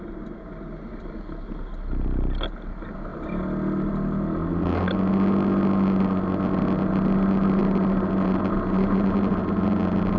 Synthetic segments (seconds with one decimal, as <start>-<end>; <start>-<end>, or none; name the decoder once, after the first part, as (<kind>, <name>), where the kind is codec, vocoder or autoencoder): none